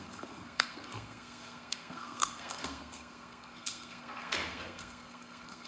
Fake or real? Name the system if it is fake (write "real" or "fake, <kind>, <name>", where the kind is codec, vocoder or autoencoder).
fake, codec, SNAC